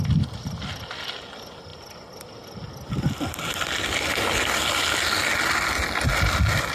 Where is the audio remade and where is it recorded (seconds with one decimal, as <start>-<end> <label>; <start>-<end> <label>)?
0.0-6.7 recorded